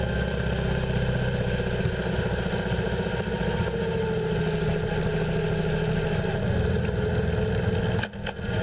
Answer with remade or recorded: recorded